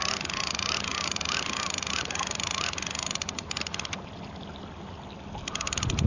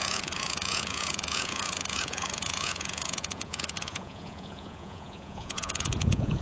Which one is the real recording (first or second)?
first